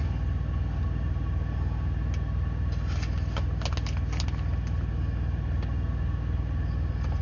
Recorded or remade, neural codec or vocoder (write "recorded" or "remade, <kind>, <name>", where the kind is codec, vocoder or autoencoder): recorded